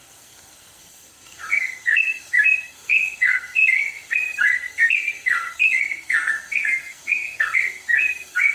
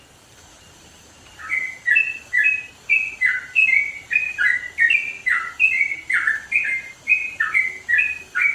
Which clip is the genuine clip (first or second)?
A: second